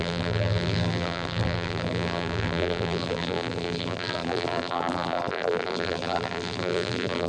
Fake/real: fake